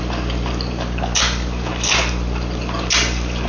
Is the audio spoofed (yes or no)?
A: no